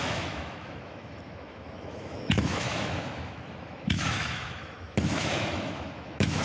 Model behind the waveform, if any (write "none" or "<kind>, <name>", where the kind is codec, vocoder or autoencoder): autoencoder, DAC-VAE